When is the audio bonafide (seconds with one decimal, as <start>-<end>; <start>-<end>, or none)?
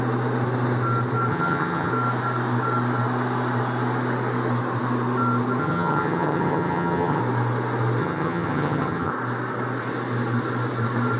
0.0-1.3; 1.9-5.6; 7.2-8.0; 9.1-11.2